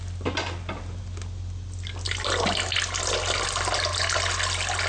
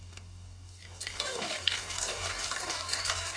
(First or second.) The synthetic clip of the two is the second